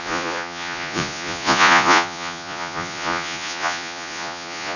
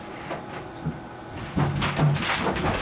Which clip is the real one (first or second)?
second